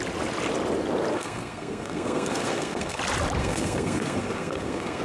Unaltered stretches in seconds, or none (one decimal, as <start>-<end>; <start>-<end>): 0.0-1.1; 3.0-3.4